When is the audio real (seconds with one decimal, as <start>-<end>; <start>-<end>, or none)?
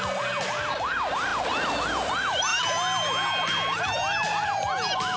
0.0-5.2